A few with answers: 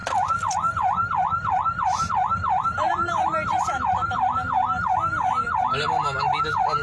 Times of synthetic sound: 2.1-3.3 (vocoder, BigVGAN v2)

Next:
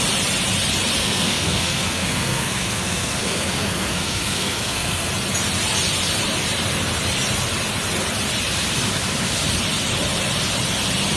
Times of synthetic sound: 1.0-5.1 (codec, SNAC)

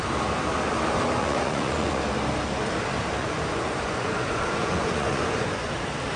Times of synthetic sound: 1.2-2.0 (vocoder, Vocos); 3.2-5.7

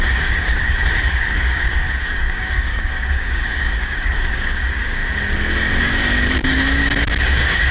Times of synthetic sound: 0.0-5.0 (codec, DAC); 5.8-7.7

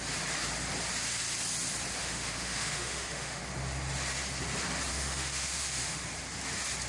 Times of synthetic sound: 2.0-3.4 (autoencoder, DAC-VAE); 4.9-6.0

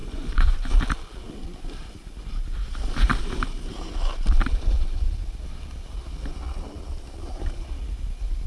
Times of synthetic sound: 0.0-0.7 (vocoder, Vocos)

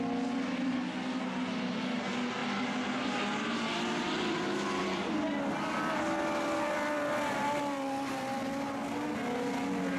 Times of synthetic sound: none

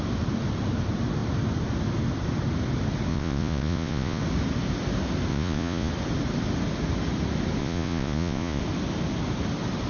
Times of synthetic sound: 3.1-4.2 (vocoder, Vocos); 5.3-5.9; 7.6-8.6